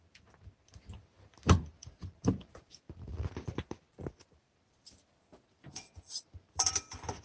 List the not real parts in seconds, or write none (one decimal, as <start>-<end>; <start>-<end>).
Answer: 1.7-2.7; 5.3-6.7